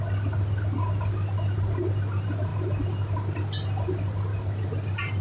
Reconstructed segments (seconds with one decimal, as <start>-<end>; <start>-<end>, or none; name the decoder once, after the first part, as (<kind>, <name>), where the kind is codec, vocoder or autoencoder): none